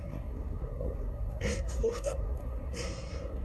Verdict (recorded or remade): remade